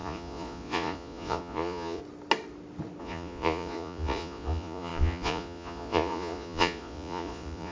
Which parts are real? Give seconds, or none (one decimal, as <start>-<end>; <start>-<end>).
2.0-3.0